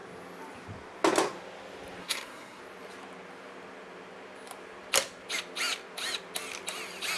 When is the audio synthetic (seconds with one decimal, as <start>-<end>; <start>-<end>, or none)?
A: 2.0-2.6